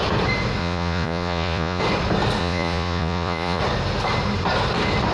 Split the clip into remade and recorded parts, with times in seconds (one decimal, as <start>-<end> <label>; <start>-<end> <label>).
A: 0.0-0.6 recorded; 0.6-1.8 remade; 1.8-2.4 recorded; 2.4-3.6 remade; 3.6-5.1 recorded